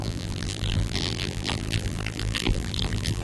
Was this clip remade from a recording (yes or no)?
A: yes